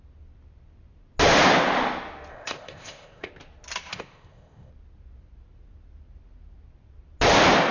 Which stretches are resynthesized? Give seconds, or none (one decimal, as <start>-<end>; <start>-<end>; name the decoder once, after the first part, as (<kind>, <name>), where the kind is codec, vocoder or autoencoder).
2.3-3.3 (codec, ZipCodec); 3.9-4.7